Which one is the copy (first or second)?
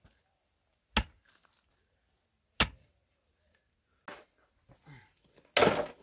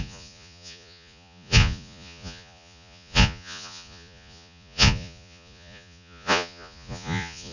second